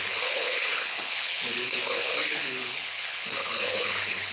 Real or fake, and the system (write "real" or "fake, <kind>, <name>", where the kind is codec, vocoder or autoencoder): fake, codec, HILCodec